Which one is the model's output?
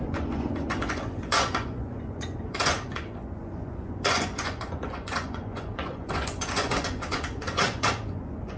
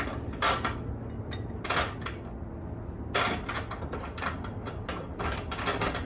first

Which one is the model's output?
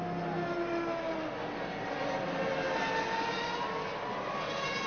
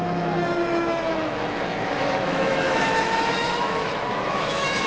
second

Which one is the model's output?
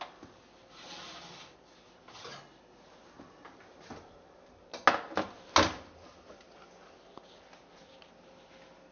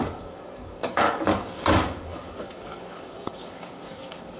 second